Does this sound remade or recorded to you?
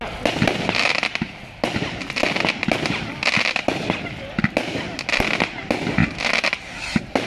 recorded